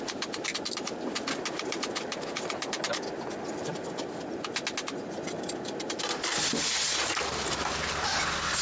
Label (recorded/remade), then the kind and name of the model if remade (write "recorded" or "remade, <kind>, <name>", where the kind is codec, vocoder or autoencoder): recorded